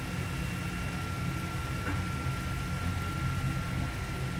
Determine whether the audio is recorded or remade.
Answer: recorded